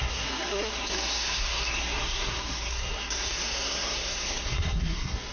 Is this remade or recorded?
remade